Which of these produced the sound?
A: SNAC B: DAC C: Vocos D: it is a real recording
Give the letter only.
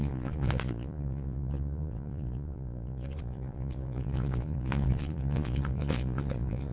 C